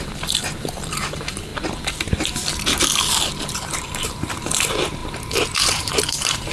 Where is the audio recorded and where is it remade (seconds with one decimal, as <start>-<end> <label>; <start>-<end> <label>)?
0.0-1.5 remade; 1.5-3.5 recorded; 3.5-6.5 remade